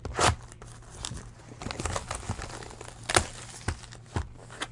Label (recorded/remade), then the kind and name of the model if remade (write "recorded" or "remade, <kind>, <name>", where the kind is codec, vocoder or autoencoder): recorded